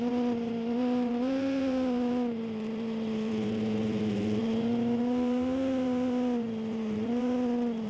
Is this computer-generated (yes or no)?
yes